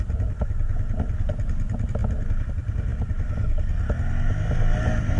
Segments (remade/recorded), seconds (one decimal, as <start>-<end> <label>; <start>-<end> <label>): 0.0-5.2 recorded